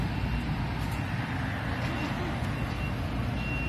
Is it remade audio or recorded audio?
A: recorded